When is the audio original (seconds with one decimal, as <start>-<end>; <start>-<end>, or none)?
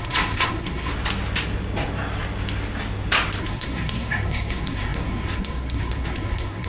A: 0.9-3.4